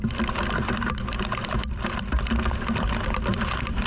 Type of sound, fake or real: fake